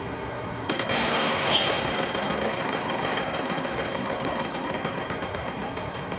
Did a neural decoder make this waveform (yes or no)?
yes